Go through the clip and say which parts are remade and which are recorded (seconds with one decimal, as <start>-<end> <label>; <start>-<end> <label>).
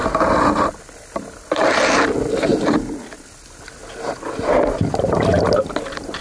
0.0-6.2 recorded